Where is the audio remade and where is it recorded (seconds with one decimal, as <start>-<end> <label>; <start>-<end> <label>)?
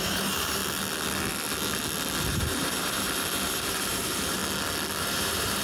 0.0-0.6 remade; 0.6-2.2 recorded; 2.2-4.4 remade; 4.4-5.0 recorded; 5.0-5.6 remade